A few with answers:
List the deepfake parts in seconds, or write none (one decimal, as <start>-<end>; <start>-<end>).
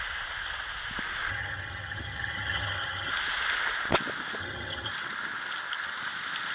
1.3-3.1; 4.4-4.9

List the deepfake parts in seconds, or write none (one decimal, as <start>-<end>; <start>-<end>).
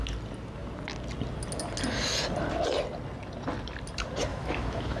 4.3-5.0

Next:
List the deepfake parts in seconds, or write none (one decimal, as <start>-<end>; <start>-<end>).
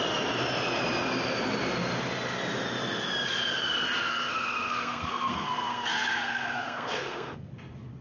4.1-7.5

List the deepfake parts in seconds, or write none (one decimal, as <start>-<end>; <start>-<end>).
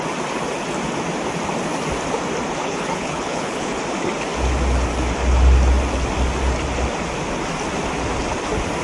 2.6-3.8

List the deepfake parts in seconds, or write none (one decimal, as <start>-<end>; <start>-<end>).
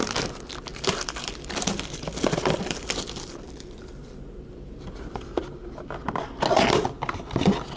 0.7-5.4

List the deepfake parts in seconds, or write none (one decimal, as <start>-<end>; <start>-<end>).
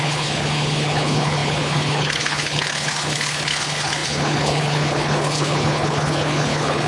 0.0-6.9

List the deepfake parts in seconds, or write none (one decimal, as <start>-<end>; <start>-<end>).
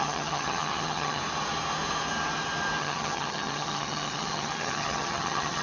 0.0-1.2; 2.8-5.6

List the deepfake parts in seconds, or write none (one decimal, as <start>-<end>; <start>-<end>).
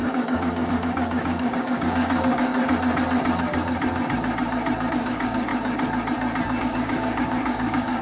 0.0-2.5; 4.9-5.5; 6.6-8.0